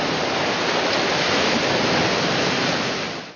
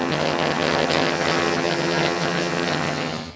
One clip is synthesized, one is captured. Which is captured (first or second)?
first